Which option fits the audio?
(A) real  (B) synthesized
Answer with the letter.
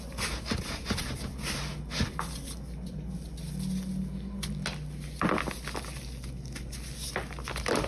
A